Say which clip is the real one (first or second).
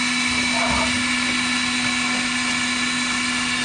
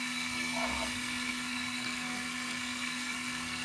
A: first